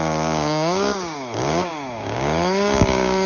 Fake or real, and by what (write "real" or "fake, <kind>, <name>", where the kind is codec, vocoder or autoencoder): fake, codec, DAC